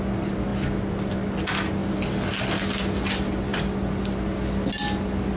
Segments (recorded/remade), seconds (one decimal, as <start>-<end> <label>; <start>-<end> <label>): 0.0-5.4 recorded